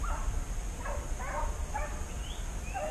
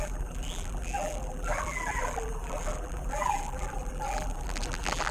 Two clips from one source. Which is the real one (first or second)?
first